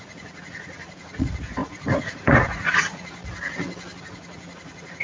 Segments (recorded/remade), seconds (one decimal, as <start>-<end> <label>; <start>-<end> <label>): 0.0-3.2 remade; 3.2-4.0 recorded; 4.0-5.0 remade